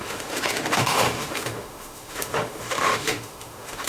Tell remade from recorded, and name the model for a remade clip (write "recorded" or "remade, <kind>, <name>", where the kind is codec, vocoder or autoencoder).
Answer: remade, autoencoder, DAC-VAE